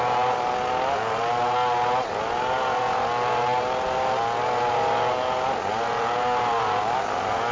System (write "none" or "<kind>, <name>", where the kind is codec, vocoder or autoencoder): none